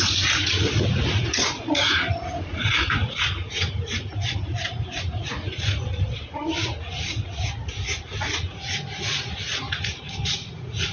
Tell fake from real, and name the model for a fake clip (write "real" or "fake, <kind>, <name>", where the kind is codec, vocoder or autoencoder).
fake, vocoder, Vocos